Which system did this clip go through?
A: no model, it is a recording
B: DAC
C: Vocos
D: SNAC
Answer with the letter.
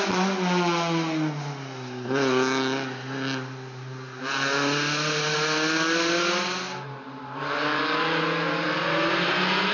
A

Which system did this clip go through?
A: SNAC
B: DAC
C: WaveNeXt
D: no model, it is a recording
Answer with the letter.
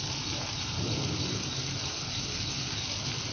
D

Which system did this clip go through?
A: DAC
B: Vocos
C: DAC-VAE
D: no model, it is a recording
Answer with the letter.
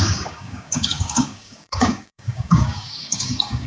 A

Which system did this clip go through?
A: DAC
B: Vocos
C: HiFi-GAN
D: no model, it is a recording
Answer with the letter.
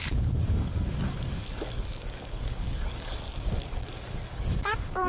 A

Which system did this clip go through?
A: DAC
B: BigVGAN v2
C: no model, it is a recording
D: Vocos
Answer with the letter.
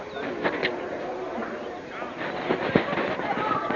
C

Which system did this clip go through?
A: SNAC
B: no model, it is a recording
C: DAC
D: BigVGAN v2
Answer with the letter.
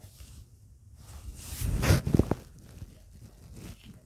B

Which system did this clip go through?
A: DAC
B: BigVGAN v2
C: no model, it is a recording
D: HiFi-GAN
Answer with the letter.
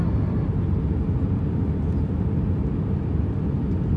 C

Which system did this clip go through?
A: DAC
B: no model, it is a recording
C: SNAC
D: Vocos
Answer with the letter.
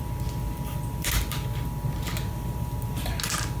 B